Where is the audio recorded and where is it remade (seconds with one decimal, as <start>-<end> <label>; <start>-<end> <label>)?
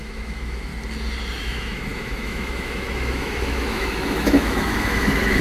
0.0-0.7 remade; 0.7-1.4 recorded; 1.4-5.4 remade